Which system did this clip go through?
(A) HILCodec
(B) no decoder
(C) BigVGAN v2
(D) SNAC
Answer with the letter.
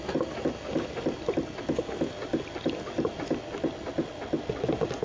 B